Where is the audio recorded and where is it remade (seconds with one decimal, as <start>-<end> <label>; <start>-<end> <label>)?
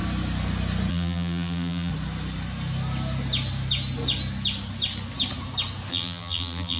0.0-0.9 recorded; 0.9-1.9 remade; 1.9-5.9 recorded; 5.9-6.8 remade